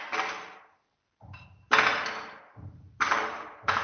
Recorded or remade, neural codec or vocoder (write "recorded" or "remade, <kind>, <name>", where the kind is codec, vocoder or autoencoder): recorded